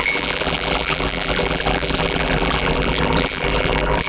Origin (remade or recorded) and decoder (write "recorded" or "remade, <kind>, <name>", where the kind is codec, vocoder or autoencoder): remade, vocoder, BigVGAN v2